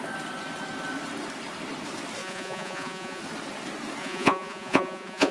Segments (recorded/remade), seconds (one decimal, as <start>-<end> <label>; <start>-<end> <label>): 0.0-2.2 recorded; 2.2-3.2 remade; 3.2-4.0 recorded; 4.0-5.3 remade